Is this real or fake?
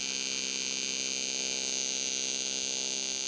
real